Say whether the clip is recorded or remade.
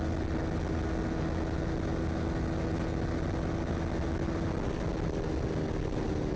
recorded